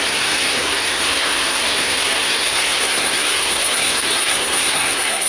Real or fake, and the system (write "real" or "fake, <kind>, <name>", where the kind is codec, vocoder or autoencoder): fake, codec, SNAC